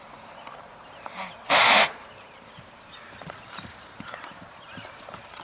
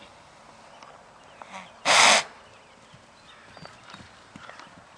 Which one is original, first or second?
second